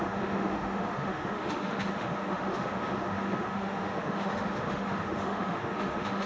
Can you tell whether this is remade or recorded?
remade